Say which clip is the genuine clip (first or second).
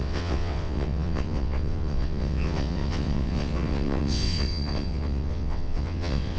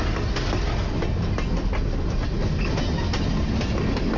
second